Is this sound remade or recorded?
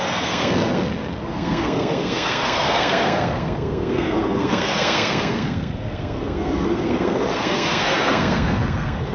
remade